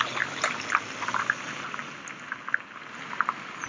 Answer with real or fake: real